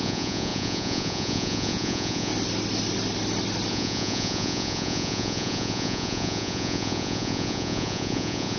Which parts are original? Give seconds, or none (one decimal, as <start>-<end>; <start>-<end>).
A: 2.3-3.7